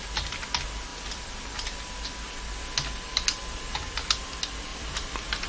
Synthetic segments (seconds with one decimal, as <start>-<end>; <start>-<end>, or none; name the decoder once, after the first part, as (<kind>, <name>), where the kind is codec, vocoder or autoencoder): 0.9-1.8 (vocoder, BigVGAN v2); 3.1-3.9; 4.7-5.5